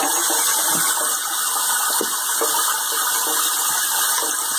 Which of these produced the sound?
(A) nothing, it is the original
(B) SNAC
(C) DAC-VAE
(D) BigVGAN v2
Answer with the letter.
A